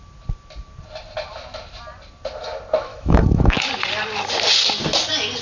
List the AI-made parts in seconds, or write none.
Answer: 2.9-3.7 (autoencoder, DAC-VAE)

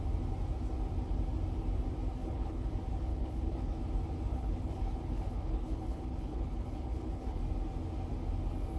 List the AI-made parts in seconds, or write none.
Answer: 2.2-2.7 (codec, HILCodec); 3.1-3.8; 4.3-7.4

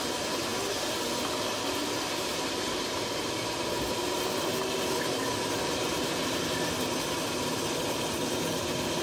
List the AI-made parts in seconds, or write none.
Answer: 2.3-2.9 (vocoder, BigVGAN v2)